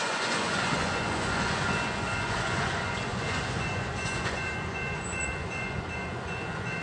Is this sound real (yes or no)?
no